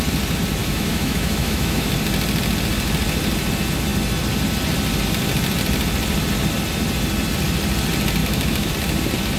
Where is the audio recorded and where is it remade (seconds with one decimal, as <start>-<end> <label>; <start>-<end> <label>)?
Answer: 0.0-0.6 recorded; 0.6-1.9 remade; 1.9-8.2 recorded; 8.2-8.7 remade; 8.7-9.4 recorded